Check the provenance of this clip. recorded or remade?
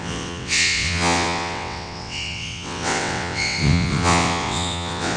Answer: remade